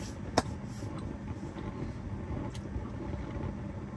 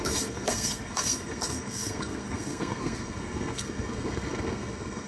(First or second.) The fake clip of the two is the second